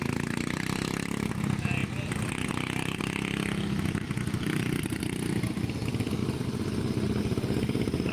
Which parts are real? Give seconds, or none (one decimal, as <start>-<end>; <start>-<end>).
0.0-8.1